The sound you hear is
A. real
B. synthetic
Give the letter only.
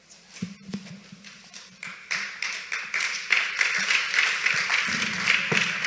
B